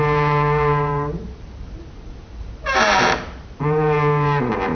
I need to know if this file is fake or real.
fake